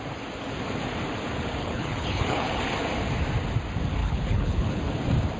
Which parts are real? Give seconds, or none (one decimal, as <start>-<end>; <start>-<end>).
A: 0.0-1.6; 2.6-4.0; 4.8-5.4